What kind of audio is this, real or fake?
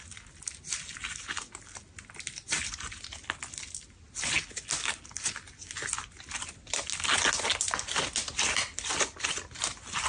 real